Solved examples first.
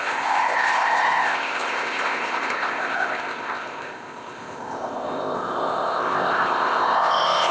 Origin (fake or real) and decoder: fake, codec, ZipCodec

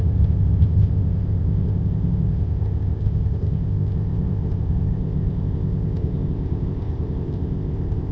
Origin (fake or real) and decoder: fake, codec, ZipCodec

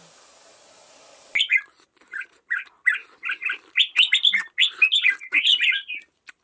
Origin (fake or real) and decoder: real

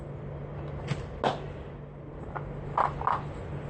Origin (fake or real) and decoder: real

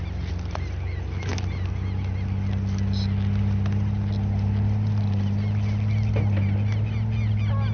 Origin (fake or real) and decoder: real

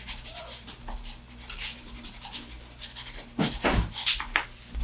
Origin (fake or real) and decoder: real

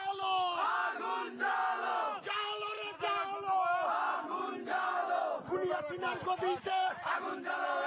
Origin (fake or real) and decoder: real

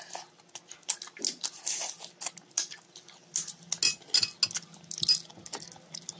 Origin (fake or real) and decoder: real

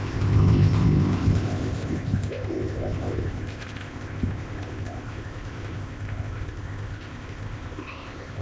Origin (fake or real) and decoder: fake, codec, ZipCodec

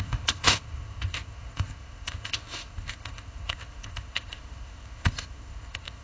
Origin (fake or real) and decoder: fake, codec, ZipCodec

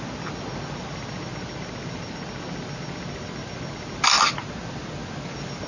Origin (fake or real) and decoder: real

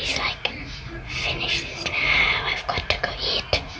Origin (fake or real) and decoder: real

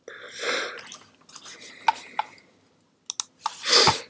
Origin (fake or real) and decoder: real